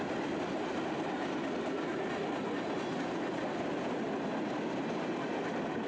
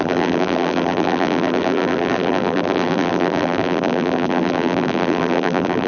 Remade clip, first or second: second